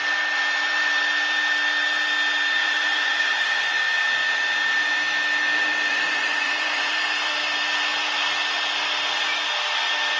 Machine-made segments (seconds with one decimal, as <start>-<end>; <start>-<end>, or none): 2.6-3.8; 5.9-7.3